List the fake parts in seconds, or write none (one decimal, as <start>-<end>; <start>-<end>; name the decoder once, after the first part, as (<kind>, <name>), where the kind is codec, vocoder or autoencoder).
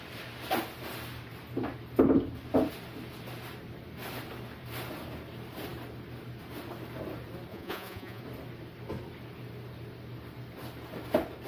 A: 7.5-8.2 (vocoder, Vocos)